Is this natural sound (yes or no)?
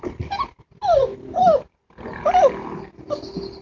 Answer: yes